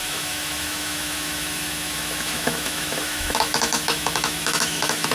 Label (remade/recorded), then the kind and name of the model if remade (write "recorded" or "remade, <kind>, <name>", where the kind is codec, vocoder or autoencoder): remade, autoencoder, DAC-VAE